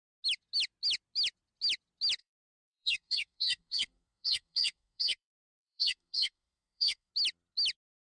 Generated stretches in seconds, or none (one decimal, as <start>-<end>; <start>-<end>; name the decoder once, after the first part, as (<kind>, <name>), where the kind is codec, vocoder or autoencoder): 2.2-7.1 (codec, SNAC)